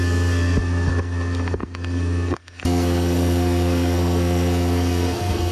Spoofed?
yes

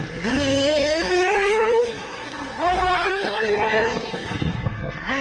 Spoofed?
yes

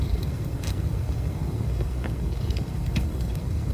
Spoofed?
yes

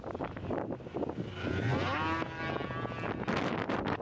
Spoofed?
no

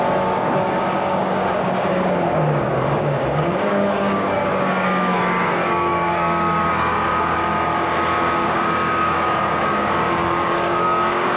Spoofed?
yes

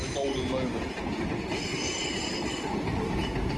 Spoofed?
no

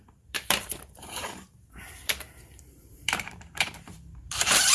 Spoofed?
yes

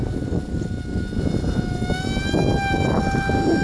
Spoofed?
no